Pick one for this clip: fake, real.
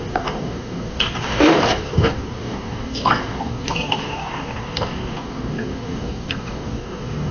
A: fake